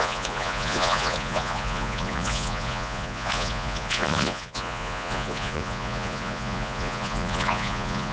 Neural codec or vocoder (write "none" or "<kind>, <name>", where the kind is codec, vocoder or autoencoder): vocoder, Vocos